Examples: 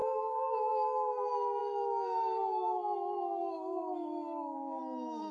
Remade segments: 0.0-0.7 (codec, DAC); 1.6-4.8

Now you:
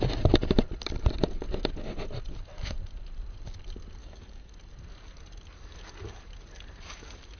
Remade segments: 4.0-4.5 (codec, DAC)

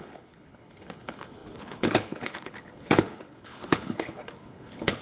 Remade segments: 0.0-5.0 (codec, HILCodec)